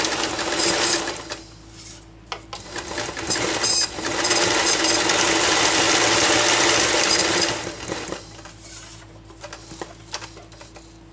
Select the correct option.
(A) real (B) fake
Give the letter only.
A